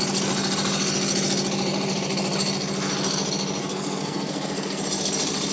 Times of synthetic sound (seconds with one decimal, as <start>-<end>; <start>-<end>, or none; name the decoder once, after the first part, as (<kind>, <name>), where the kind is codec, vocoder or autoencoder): 3.6-4.8 (codec, SNAC)